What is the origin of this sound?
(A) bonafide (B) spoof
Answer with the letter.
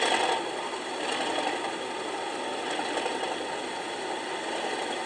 A